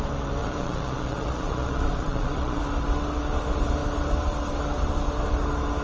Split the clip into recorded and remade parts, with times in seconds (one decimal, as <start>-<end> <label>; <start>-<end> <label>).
0.0-0.4 recorded; 0.4-2.6 remade; 2.6-5.8 recorded